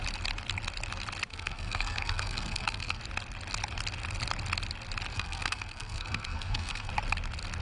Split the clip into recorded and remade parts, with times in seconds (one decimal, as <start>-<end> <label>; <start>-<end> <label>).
0.0-1.3 recorded; 1.3-3.0 remade; 3.0-5.1 recorded; 5.1-6.9 remade; 6.9-7.6 recorded